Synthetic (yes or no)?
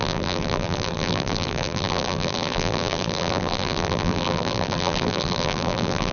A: yes